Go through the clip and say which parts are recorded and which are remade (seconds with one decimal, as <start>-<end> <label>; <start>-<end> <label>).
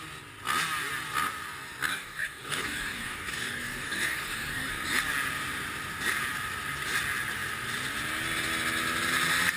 0.0-1.9 recorded; 1.9-4.7 remade; 4.7-9.6 recorded